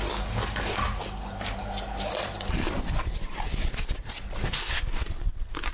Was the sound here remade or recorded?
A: recorded